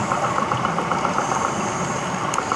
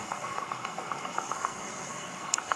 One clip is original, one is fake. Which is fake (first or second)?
second